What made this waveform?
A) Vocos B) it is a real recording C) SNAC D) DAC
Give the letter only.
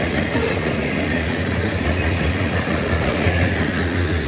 A